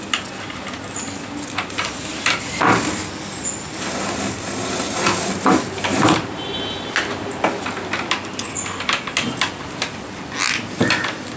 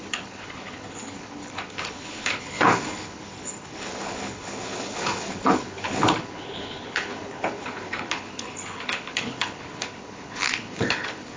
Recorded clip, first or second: first